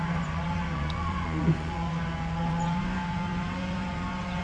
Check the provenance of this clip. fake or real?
fake